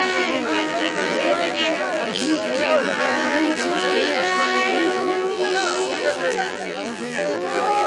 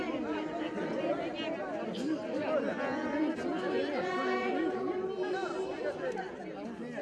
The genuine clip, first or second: second